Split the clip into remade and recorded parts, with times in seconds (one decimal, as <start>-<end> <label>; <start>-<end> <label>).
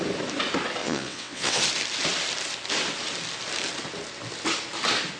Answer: 0.0-0.8 recorded; 0.8-1.6 remade; 1.6-5.2 recorded